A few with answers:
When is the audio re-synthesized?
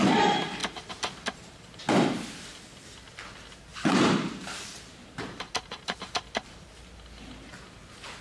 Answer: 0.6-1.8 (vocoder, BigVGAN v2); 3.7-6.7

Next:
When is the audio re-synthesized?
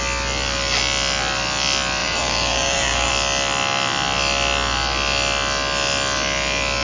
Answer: 2.0-3.1 (vocoder, BigVGAN v2)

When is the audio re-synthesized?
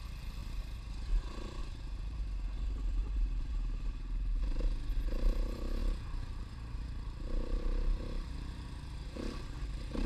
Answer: 0.4-1.1 (vocoder, BigVGAN v2); 1.6-4.4; 5.8-10.1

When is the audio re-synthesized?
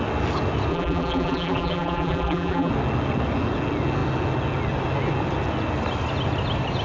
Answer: 0.7-2.7 (vocoder, BigVGAN v2)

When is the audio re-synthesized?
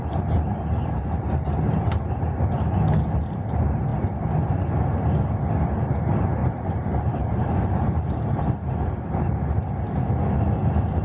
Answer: 3.9-4.7 (vocoder, BigVGAN v2); 6.4-8.4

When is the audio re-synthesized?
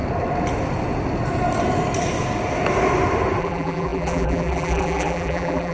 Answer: 3.4-5.7 (vocoder, BigVGAN v2)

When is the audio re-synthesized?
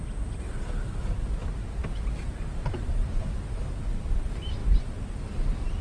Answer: 1.8-3.4 (vocoder, BigVGAN v2)